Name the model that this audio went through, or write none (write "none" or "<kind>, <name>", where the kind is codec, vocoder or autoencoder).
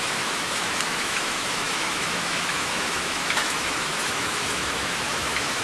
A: autoencoder, DAC-VAE